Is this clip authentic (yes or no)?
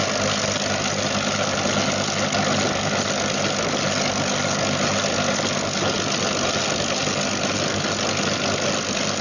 yes